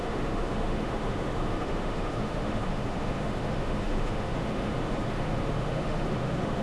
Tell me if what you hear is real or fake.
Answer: fake